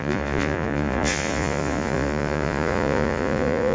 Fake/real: fake